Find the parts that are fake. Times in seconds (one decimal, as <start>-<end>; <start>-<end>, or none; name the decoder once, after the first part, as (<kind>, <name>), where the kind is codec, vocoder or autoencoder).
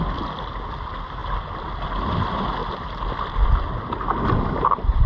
none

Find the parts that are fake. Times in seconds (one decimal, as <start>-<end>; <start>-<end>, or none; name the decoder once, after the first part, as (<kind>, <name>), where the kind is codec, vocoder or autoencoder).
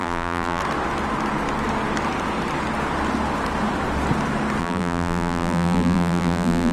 0.0-0.6 (vocoder, BigVGAN v2); 4.6-6.7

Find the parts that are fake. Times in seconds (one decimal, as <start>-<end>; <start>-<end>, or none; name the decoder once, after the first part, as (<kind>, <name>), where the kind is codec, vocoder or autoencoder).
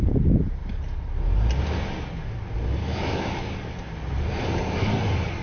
2.8-3.4 (autoencoder, DAC-VAE)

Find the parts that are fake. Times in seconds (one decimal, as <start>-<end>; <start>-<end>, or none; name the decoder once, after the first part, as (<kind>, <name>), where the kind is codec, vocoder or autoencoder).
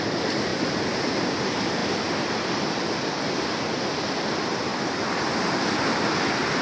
none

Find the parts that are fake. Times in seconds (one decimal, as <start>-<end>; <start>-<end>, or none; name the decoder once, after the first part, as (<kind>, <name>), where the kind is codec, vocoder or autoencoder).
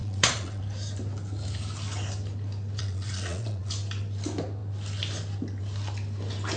0.0-0.6 (vocoder, Vocos); 2.8-3.7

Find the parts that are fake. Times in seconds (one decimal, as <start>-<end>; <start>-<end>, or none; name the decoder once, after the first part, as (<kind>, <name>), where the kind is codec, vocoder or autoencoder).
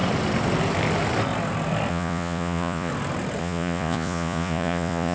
1.9-2.9 (vocoder, Vocos); 3.4-5.1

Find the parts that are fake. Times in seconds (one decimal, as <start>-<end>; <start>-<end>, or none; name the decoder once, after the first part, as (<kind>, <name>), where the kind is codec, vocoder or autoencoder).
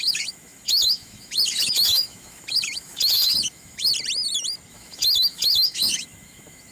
0.0-3.9 (autoencoder, DAC-VAE); 4.7-6.7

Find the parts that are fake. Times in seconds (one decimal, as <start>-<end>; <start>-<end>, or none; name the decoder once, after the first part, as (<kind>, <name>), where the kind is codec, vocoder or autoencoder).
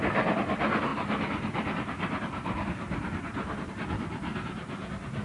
none